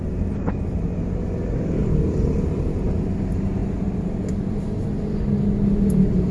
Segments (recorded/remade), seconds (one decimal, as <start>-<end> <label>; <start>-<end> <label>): 0.0-1.8 recorded; 1.8-2.5 remade; 2.5-6.3 recorded